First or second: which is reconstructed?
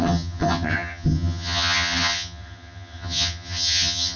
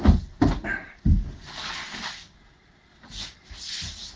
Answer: first